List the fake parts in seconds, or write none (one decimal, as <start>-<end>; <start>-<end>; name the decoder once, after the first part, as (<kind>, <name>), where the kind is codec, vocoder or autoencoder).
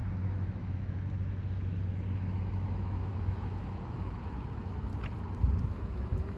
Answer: 0.0-4.9 (autoencoder, DAC-VAE); 5.6-6.4